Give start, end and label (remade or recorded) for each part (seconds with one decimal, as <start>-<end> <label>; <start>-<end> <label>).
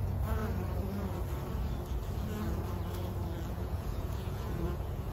0.0-0.4 remade; 0.4-3.5 recorded; 3.5-5.1 remade